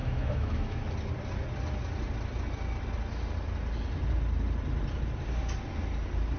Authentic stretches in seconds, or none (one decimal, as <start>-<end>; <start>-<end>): 0.8-6.4